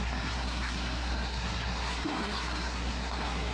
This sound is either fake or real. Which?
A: fake